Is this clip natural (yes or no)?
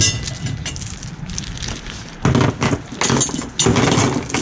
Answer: yes